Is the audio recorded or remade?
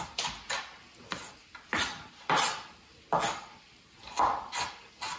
recorded